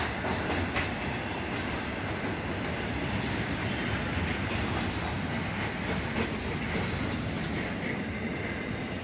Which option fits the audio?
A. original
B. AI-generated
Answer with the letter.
A